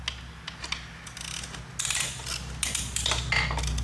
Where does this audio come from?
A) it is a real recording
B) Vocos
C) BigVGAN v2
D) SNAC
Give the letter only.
A